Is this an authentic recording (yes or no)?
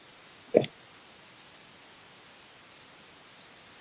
yes